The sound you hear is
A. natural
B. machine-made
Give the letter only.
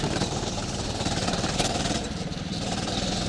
B